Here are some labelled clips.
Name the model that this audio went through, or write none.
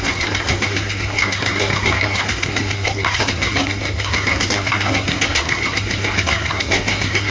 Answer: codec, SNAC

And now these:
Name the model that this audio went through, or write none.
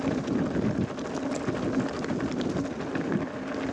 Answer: none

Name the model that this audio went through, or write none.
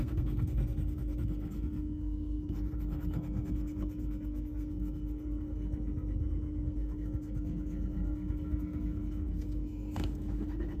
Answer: codec, SNAC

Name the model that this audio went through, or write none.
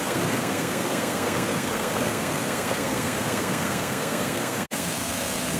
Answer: codec, SNAC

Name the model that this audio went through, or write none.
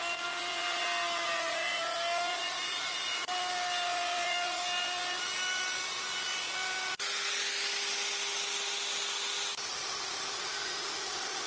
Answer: none